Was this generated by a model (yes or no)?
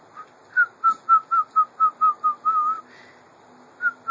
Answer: no